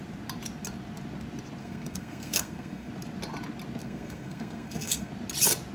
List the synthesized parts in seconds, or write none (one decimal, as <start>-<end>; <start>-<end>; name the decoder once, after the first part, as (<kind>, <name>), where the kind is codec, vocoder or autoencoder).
1.6-2.9 (codec, SNAC); 3.8-5.1

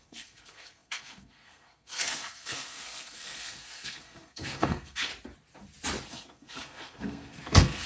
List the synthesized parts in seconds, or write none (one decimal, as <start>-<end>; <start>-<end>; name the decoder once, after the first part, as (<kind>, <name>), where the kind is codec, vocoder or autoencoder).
0.0-5.1 (codec, SNAC); 6.1-7.9

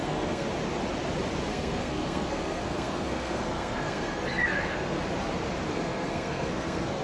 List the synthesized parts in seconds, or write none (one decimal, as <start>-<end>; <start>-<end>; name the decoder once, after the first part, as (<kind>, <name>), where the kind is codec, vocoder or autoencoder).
0.0-0.5 (codec, SNAC); 1.5-5.0; 5.7-7.0

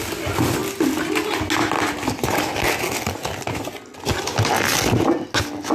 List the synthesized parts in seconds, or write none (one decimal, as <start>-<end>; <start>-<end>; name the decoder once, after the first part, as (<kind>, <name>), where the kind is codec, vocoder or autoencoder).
none

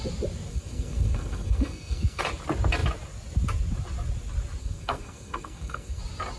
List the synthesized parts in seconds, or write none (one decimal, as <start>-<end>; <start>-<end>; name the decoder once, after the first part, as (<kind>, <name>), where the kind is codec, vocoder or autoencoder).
0.5-2.2 (codec, SNAC); 4.6-6.0

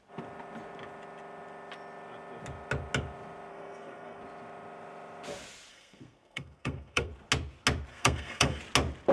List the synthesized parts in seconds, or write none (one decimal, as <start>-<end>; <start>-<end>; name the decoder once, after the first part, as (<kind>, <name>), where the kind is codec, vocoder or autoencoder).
3.5-4.2 (codec, SNAC); 5.7-7.1; 7.9-8.6

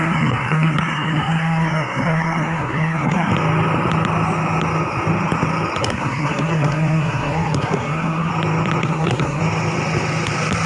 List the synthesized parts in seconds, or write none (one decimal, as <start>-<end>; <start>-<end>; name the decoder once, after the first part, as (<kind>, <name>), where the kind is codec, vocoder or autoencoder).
0.0-3.3 (codec, SNAC); 5.8-8.3; 8.8-9.4

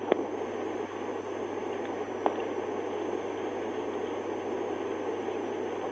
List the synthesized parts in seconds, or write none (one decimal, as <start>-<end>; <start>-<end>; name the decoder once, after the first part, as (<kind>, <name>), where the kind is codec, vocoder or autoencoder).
none